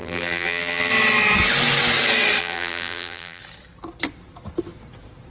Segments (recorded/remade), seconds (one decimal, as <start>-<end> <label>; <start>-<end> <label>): 0.0-0.9 remade; 0.9-2.4 recorded; 2.4-3.4 remade; 3.4-5.3 recorded